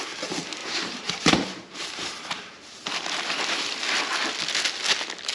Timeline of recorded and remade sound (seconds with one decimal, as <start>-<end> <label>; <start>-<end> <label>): 0.0-0.6 recorded; 0.6-3.8 remade; 3.8-5.3 recorded